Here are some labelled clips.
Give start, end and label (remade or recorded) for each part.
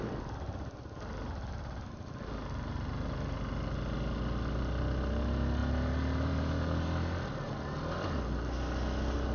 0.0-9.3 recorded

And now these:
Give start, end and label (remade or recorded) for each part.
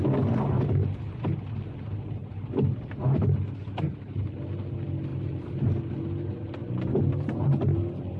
0.0-8.2 recorded